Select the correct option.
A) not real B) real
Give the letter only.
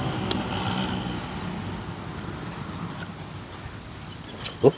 B